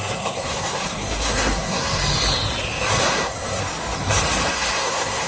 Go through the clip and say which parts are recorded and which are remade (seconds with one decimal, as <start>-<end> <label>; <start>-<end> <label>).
0.0-2.0 remade; 2.0-3.0 recorded; 3.0-3.6 remade; 3.6-4.5 recorded; 4.5-5.3 remade